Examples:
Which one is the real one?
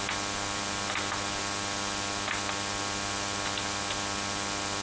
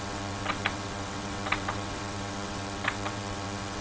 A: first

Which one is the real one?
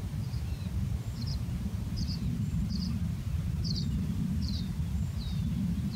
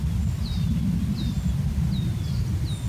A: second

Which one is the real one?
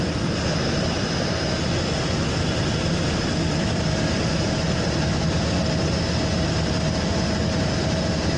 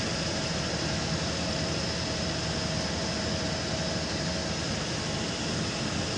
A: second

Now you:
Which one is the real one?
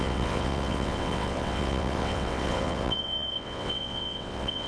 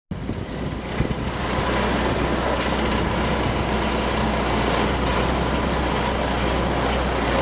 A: second